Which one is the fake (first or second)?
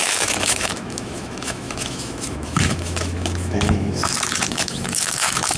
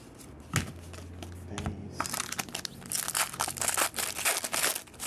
first